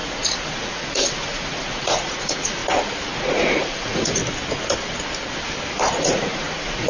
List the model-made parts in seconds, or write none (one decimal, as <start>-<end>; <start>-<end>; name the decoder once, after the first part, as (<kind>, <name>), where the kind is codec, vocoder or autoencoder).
0.0-2.6 (vocoder, Vocos); 3.2-4.2; 6.0-6.9